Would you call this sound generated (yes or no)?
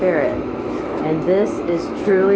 yes